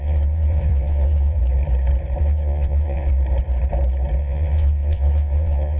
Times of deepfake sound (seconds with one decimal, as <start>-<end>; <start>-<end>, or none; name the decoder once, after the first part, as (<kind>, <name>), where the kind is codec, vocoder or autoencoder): 0.0-1.4 (vocoder, WaveNeXt); 2.2-3.1; 4.2-5.8